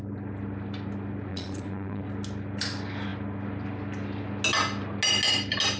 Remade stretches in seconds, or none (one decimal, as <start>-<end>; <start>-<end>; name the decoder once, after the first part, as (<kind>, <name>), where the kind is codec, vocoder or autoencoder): 1.3-2.0 (vocoder, Vocos)